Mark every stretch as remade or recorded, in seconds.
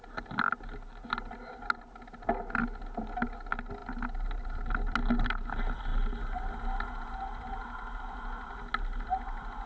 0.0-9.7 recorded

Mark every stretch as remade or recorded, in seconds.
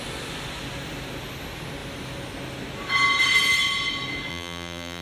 0.0-4.3 recorded; 4.3-5.0 remade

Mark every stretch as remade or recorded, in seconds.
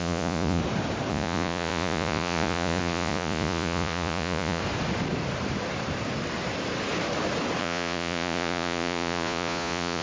0.0-0.6 remade; 0.6-1.1 recorded; 1.1-4.6 remade; 4.6-7.6 recorded; 7.6-10.0 remade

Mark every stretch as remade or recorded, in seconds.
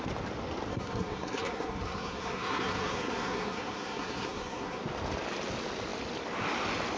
0.0-0.7 recorded; 0.7-4.8 remade; 4.8-7.0 recorded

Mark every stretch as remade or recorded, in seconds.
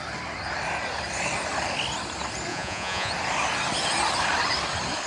0.0-2.5 recorded; 2.5-3.1 remade; 3.1-5.1 recorded